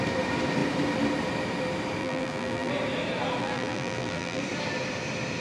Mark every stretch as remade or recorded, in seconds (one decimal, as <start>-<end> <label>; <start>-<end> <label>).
0.0-2.0 recorded; 2.0-2.7 remade; 2.7-3.4 recorded; 3.4-4.4 remade; 4.4-5.4 recorded